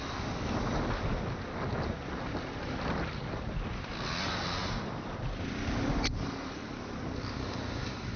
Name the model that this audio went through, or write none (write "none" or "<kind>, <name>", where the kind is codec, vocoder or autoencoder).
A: none